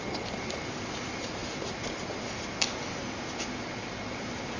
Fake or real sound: real